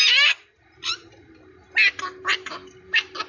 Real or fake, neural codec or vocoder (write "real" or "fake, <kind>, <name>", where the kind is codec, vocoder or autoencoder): real